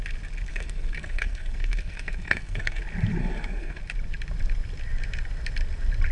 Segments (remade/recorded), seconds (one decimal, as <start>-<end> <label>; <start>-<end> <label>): 0.0-0.5 recorded; 0.5-2.8 remade; 2.8-3.2 recorded; 3.2-3.8 remade; 3.8-6.1 recorded